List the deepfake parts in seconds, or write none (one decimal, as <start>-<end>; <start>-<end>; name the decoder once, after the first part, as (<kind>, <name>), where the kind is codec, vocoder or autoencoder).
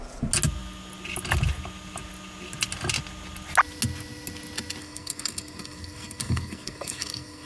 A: 4.8-7.5 (codec, SNAC)